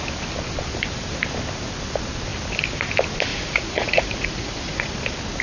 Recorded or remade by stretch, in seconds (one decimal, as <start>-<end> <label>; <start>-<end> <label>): 0.0-3.3 recorded; 3.3-4.9 remade; 4.9-5.4 recorded